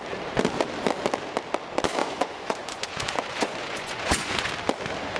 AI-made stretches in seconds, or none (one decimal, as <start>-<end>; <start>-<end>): 2.0-4.5